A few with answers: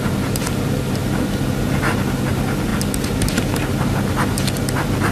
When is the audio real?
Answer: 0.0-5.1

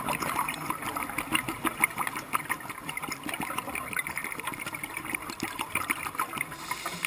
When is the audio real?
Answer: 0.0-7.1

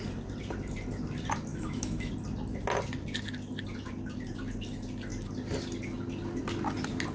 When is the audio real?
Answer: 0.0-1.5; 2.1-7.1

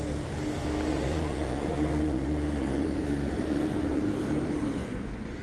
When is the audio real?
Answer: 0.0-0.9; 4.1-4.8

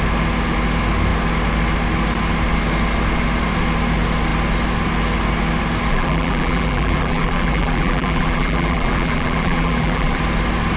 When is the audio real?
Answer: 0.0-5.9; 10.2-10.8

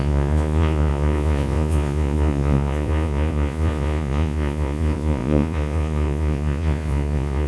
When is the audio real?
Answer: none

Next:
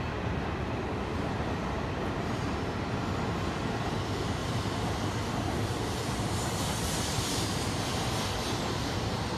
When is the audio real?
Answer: 0.0-4.4; 5.1-9.4